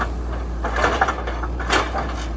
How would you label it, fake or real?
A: real